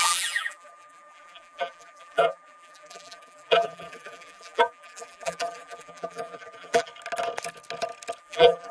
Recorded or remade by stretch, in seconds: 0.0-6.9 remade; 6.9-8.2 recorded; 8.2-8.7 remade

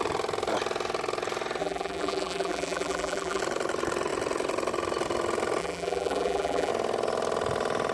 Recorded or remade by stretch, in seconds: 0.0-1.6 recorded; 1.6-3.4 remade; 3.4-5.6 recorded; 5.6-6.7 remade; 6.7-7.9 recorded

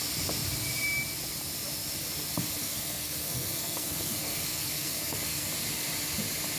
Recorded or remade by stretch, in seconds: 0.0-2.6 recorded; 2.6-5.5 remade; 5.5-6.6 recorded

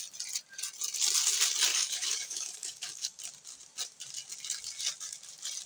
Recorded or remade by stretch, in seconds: 0.0-1.7 recorded; 1.7-3.2 remade; 3.2-5.7 recorded